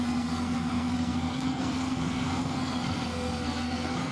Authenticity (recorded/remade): remade